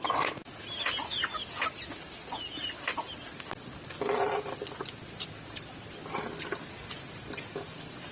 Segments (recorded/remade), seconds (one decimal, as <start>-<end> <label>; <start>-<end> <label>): 0.0-8.1 recorded

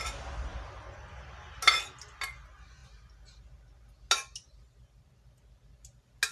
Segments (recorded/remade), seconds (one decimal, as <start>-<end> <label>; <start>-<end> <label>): 0.0-6.3 recorded

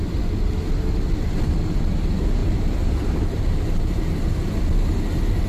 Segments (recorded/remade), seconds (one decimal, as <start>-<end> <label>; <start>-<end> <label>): 0.0-2.4 recorded; 2.4-4.0 remade; 4.0-5.5 recorded

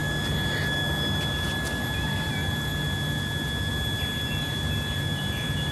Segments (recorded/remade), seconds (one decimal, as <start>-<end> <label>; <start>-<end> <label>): 0.0-5.7 recorded

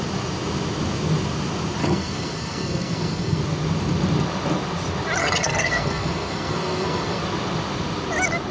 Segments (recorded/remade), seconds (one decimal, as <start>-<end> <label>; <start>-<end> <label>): 0.0-1.8 recorded; 1.8-3.4 remade; 3.4-5.2 recorded; 5.2-7.2 remade; 7.2-8.5 recorded

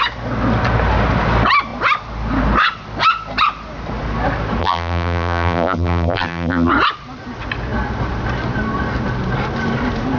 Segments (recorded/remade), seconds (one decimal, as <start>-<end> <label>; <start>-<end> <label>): 0.0-4.6 recorded; 4.6-6.7 remade; 6.7-10.2 recorded